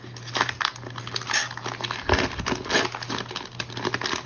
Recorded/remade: recorded